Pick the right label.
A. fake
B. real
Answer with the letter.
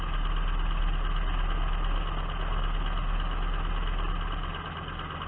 B